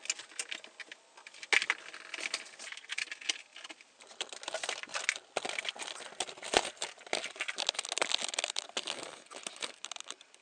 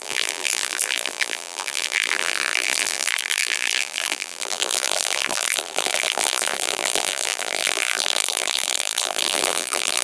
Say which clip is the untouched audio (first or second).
first